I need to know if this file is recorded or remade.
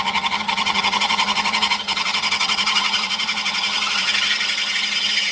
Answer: remade